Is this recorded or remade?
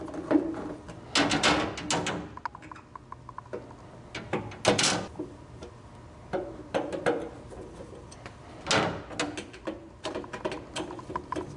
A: recorded